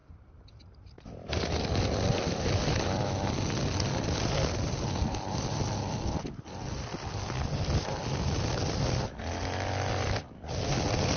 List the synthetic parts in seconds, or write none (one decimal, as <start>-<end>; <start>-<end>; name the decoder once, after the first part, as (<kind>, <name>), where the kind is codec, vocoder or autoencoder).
none